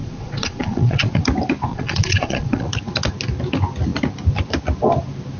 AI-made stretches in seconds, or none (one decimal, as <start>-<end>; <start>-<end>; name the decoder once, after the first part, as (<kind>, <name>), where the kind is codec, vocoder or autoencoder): 0.0-1.1 (vocoder, Vocos); 1.7-2.7